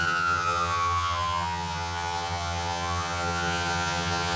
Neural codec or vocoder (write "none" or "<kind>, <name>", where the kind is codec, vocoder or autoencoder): vocoder, HiFi-GAN